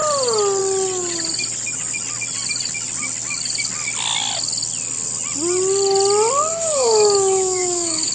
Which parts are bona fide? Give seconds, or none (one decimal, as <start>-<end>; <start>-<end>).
0.0-6.5